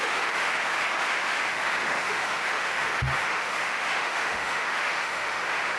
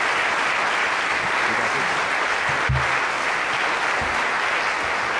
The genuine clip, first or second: second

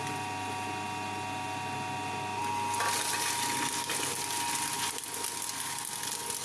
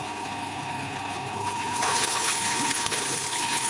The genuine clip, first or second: first